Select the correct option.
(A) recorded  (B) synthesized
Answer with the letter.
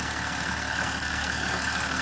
B